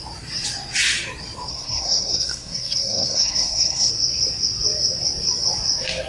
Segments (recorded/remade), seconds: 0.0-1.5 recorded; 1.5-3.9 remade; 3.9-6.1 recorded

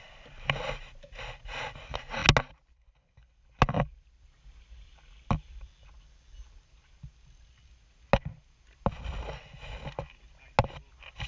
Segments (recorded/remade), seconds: 0.0-11.3 recorded

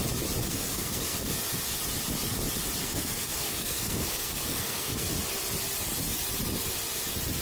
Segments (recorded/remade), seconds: 0.0-0.4 recorded; 0.4-1.3 remade; 1.3-2.8 recorded; 2.8-5.1 remade; 5.1-7.4 recorded

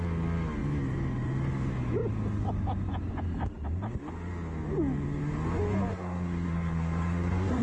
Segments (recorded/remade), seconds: 0.0-5.9 recorded; 5.9-7.6 remade

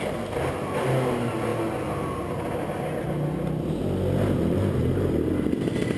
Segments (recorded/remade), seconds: 0.0-6.0 recorded

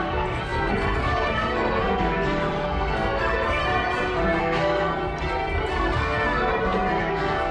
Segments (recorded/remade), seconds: 0.0-3.6 remade; 3.6-4.4 recorded; 4.4-4.9 remade; 4.9-5.7 recorded; 5.7-6.5 remade; 6.5-7.0 recorded; 7.0-7.5 remade

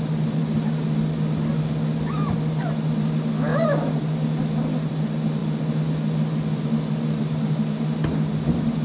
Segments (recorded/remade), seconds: 0.0-8.8 recorded

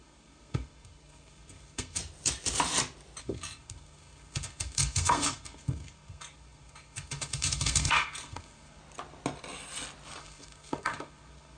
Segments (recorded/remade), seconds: 0.0-2.0 remade; 2.0-3.2 recorded; 3.2-8.8 remade; 8.8-10.2 recorded; 10.2-11.6 remade